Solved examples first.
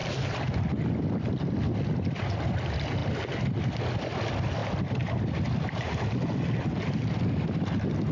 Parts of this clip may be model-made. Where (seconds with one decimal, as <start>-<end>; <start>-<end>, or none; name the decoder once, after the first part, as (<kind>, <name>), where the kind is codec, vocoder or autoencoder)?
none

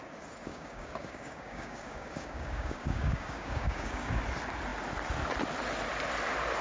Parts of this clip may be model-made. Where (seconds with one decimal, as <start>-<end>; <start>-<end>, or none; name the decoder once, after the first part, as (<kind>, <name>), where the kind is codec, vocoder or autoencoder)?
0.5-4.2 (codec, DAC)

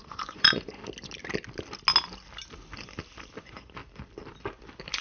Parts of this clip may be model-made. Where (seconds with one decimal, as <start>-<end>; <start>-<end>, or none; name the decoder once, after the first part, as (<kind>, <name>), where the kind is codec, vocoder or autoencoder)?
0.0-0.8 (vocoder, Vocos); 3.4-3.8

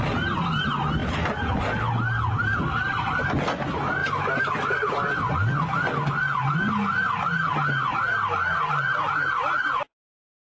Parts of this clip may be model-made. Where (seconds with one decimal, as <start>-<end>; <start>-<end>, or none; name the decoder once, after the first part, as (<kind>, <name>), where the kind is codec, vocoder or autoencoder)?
none